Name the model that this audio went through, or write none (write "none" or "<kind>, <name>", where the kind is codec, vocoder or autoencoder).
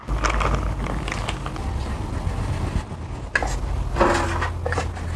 none